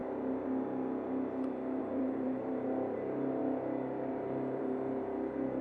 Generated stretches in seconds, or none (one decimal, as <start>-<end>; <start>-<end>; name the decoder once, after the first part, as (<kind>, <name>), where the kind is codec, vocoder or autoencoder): 1.8-3.4 (vocoder, BigVGAN v2); 4.1-5.6